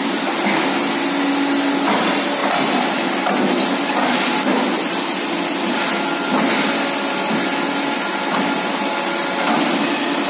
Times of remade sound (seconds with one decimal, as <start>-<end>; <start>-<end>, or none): none